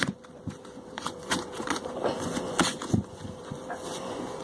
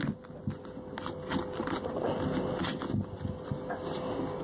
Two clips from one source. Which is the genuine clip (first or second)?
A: second